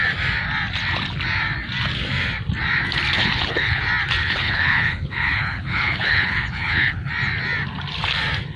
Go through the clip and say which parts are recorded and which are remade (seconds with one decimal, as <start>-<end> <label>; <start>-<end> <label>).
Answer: 0.0-3.2 recorded; 3.2-3.8 remade; 3.8-4.2 recorded; 4.2-7.1 remade; 7.1-8.6 recorded